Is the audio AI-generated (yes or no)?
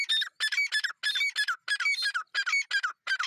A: no